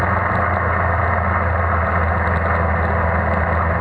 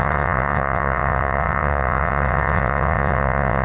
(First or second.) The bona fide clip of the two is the first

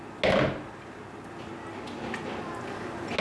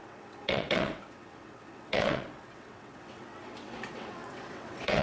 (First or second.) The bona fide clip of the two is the first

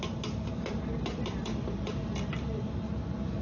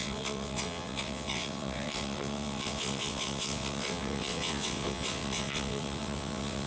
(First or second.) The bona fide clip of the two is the first